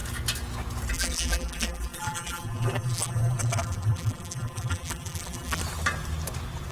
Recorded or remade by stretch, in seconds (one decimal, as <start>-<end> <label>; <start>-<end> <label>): 0.0-0.9 recorded; 0.9-5.6 remade; 5.6-6.7 recorded